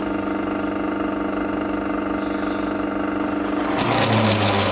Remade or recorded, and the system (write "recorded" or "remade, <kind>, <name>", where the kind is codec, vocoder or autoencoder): recorded